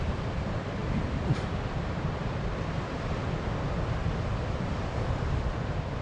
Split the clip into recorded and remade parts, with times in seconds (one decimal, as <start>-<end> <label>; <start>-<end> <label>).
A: 0.0-6.0 remade